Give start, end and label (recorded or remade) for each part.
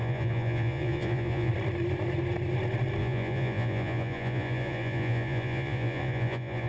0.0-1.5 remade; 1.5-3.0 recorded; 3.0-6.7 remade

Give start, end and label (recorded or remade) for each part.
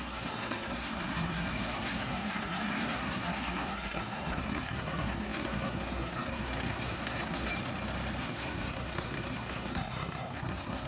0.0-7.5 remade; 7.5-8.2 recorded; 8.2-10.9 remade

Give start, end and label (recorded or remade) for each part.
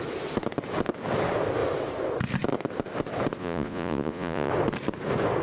0.0-3.4 recorded; 3.4-4.5 remade; 4.5-5.4 recorded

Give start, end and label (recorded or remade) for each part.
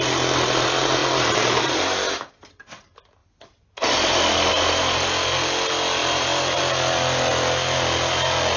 0.0-6.0 recorded; 6.0-6.6 remade; 6.6-8.6 recorded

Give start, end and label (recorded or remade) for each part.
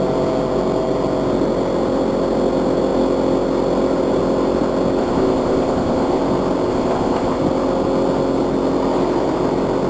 0.0-5.0 recorded; 5.0-6.2 remade; 6.2-6.7 recorded; 6.7-7.4 remade; 7.4-9.9 recorded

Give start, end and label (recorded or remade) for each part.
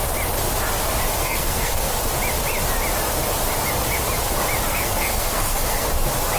0.0-1.2 recorded; 1.2-1.9 remade; 1.9-4.7 recorded; 4.7-5.9 remade; 5.9-6.4 recorded